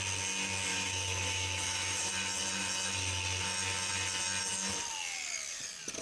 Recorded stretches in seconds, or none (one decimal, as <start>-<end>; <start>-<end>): 0.0-0.7; 2.1-6.0